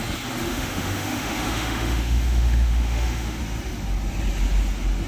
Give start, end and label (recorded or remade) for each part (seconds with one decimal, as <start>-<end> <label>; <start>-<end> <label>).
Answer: 0.0-0.4 recorded; 0.4-3.4 remade; 3.4-5.1 recorded